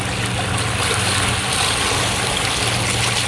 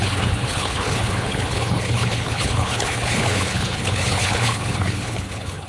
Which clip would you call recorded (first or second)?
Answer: first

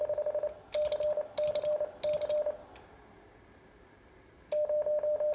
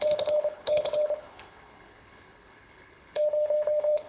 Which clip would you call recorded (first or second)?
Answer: first